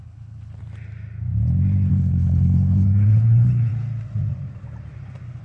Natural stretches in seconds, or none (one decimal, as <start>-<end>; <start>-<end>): 0.6-1.9; 3.7-5.4